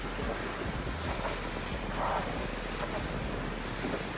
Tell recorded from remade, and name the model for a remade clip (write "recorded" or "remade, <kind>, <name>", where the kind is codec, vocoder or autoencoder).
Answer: recorded